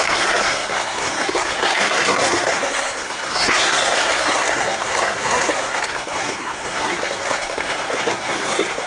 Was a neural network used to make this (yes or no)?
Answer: yes